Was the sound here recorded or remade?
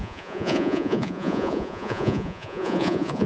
remade